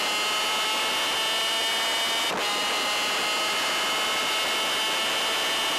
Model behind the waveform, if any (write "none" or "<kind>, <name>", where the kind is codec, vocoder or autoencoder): none